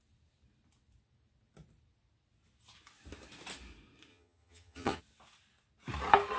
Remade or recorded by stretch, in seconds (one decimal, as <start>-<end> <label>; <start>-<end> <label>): 0.0-4.1 recorded; 4.1-5.0 remade; 5.0-6.4 recorded